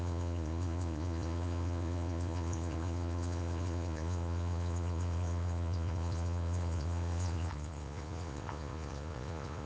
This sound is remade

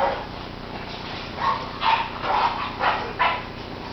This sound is recorded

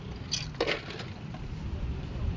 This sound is recorded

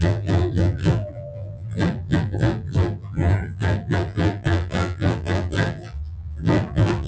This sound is remade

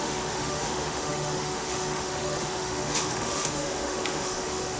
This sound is remade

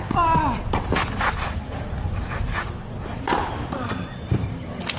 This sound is recorded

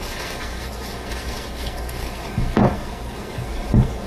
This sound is remade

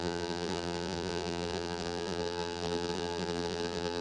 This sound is remade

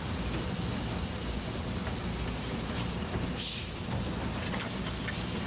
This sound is recorded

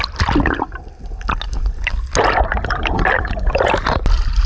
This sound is recorded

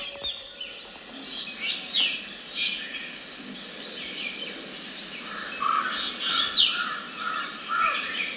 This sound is recorded